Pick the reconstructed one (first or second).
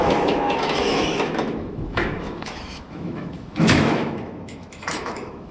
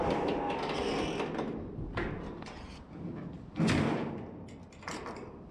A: first